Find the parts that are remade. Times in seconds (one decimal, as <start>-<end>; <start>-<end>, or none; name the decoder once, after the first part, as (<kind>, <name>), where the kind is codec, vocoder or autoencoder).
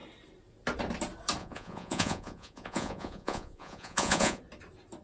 1.4-4.4 (vocoder, Vocos)